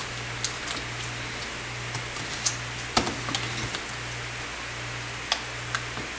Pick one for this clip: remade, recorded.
recorded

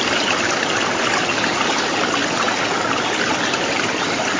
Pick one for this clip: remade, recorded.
recorded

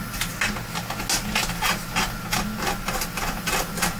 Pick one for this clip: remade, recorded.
recorded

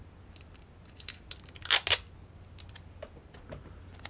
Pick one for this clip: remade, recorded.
recorded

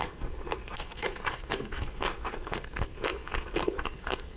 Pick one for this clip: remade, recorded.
remade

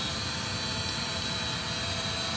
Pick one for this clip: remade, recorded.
recorded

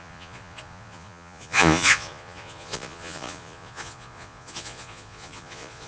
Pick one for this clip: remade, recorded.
remade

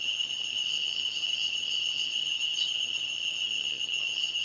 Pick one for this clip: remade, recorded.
remade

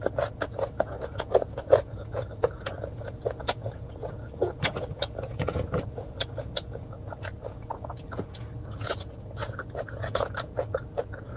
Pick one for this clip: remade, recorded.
remade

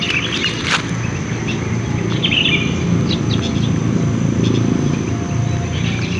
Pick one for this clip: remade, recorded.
recorded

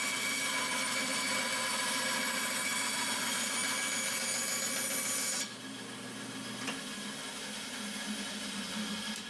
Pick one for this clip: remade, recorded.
recorded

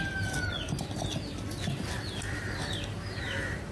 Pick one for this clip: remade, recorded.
recorded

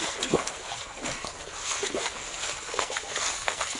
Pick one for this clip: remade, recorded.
remade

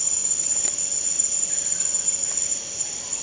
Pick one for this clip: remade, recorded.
remade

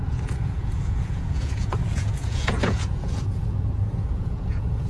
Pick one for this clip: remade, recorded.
remade